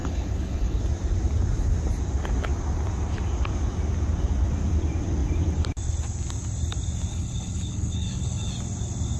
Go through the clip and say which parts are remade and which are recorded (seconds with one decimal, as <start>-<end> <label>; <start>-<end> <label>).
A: 0.0-0.8 remade; 0.8-7.1 recorded; 7.1-8.5 remade; 8.5-9.2 recorded